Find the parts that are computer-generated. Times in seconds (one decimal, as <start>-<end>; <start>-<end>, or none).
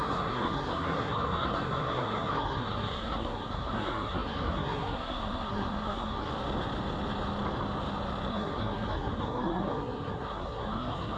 0.0-6.3; 8.3-11.2